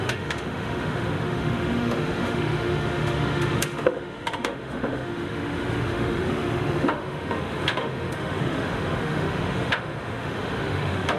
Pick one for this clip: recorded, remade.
remade